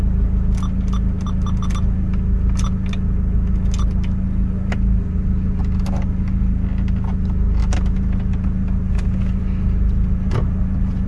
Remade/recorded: recorded